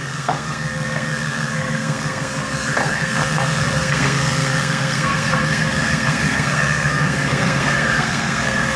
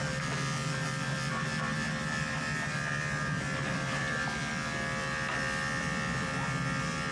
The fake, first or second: first